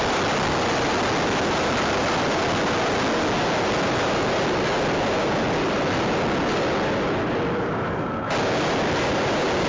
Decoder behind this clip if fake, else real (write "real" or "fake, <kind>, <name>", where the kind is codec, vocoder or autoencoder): real